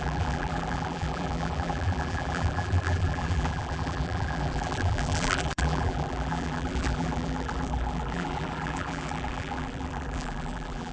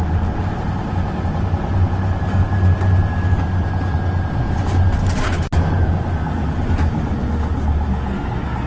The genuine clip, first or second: second